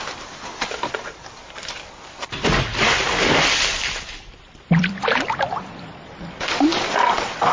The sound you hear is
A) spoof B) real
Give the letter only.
A